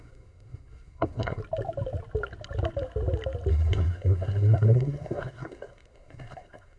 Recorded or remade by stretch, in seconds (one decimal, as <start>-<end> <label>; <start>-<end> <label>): 0.0-1.4 remade; 1.4-3.5 recorded; 3.5-6.8 remade